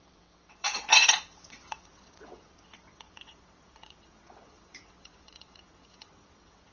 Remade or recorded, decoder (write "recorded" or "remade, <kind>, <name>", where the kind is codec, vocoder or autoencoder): remade, vocoder, WaveNeXt